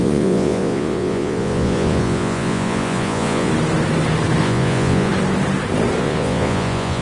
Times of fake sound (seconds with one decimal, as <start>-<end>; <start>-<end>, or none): 0.0-3.5; 4.4-5.1; 6.0-7.0